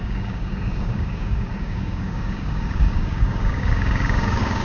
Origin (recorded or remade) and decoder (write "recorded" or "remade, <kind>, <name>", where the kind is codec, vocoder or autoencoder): remade, codec, DAC